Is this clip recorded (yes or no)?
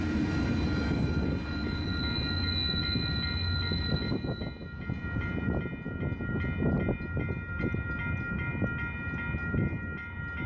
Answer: yes